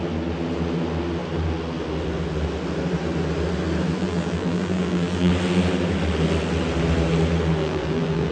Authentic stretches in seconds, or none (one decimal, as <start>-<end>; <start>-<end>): 0.0-4.0; 5.3-7.6